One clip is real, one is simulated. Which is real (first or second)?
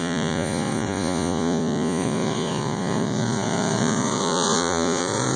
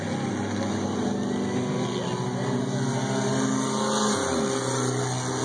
second